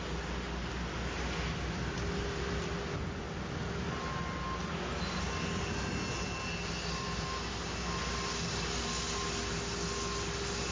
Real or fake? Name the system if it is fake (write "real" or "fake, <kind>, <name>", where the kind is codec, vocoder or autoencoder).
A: real